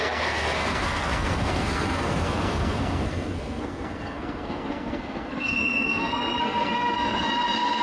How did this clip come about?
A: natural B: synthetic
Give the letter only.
B